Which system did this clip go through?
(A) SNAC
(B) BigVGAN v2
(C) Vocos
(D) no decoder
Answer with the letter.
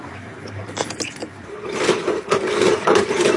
B